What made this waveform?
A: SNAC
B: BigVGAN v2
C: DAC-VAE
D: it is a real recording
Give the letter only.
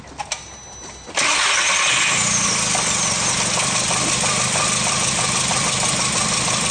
D